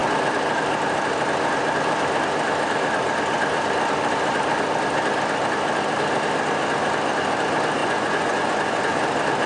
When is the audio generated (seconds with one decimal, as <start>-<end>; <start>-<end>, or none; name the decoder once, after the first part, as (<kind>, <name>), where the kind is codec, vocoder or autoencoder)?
7.8-9.0 (vocoder, Vocos)